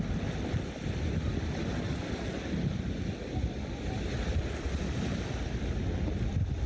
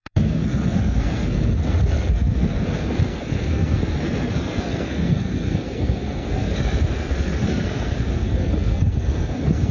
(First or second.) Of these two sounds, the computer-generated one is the second